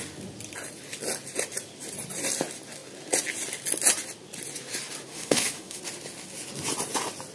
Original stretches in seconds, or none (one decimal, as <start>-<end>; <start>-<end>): 0.0-5.1; 5.8-7.3